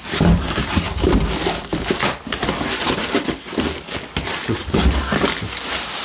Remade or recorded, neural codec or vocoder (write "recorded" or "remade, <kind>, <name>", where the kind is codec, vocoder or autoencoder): recorded